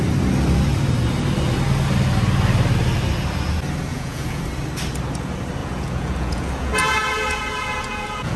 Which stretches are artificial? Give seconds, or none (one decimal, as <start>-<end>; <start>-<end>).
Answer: 3.9-4.4; 5.6-8.4